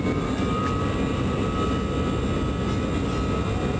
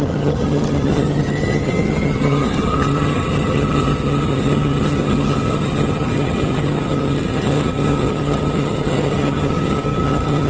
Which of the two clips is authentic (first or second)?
first